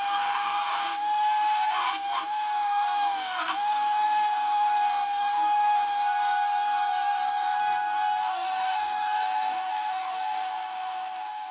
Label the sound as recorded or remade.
remade